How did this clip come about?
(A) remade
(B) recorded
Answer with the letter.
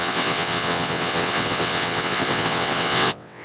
A